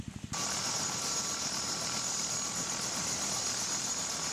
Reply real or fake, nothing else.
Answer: real